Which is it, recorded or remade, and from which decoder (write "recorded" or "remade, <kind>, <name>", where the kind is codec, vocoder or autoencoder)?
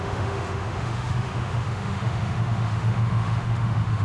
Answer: remade, autoencoder, DAC-VAE